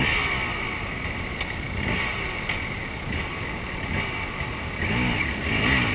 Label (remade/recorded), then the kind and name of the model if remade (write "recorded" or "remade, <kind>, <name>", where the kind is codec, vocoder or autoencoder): recorded